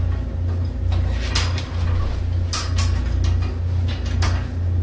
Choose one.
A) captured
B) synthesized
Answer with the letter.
A